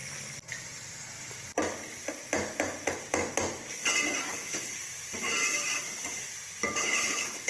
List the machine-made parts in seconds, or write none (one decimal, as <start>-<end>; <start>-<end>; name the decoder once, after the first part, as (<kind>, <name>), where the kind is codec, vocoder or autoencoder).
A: 4.3-4.8 (codec, HILCodec); 6.8-7.5